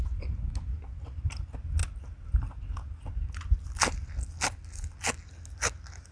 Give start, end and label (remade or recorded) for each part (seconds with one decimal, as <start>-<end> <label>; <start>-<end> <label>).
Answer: 0.0-6.1 recorded